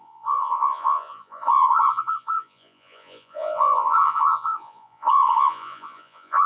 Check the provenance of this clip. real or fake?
fake